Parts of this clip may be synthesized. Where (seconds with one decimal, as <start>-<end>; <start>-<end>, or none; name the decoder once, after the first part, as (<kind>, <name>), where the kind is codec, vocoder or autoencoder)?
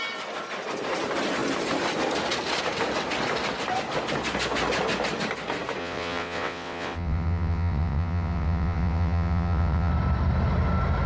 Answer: 5.8-9.9 (vocoder, WaveNeXt)